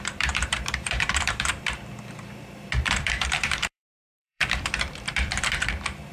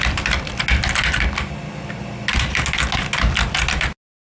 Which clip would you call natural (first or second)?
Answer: second